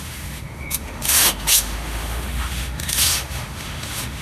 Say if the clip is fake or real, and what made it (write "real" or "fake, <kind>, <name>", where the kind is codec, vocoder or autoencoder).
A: fake, autoencoder, DAC-VAE